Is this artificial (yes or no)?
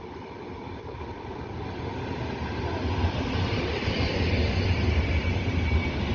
no